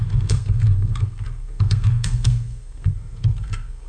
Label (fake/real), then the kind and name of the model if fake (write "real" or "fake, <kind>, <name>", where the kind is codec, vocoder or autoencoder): fake, codec, SNAC